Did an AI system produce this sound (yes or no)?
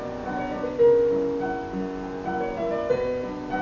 no